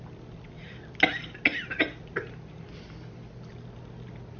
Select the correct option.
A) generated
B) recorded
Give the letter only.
B